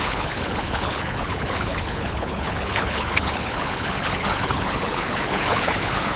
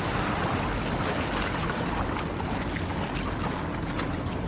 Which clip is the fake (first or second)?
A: first